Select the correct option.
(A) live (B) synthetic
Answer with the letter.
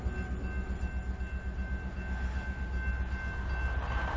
A